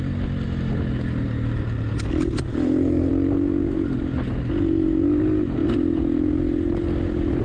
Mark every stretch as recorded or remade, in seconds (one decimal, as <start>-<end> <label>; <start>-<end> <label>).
0.0-2.5 recorded; 2.5-3.1 remade; 3.1-7.4 recorded